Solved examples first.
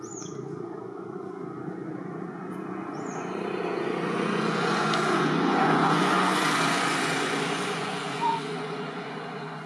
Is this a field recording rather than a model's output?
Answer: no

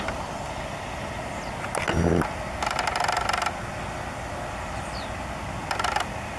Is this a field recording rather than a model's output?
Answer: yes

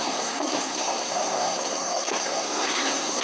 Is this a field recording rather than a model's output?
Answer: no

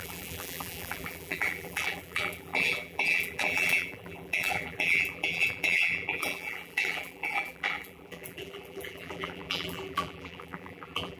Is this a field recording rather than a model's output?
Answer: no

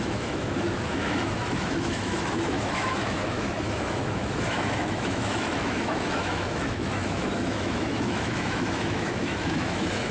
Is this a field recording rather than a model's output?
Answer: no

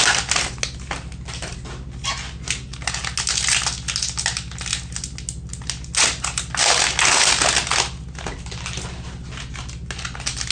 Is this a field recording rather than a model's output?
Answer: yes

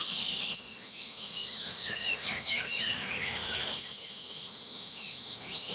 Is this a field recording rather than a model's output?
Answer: no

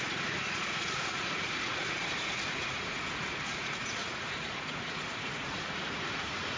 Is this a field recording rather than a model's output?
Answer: no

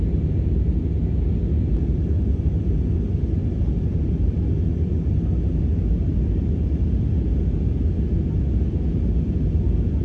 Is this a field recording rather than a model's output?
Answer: yes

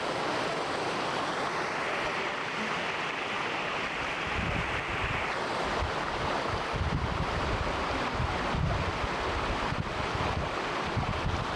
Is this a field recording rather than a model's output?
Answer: yes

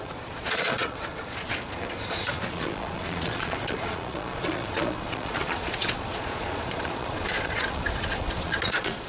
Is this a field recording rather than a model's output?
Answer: no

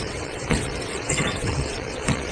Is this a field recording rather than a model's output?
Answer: no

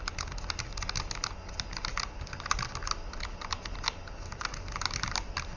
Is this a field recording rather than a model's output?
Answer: yes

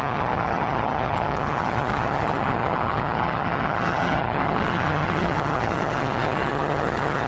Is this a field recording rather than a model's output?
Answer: no